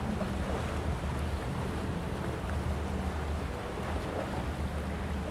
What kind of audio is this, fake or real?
real